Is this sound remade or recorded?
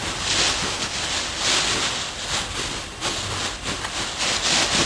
recorded